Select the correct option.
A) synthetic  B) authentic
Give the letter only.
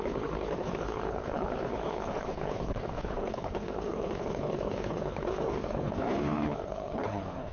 A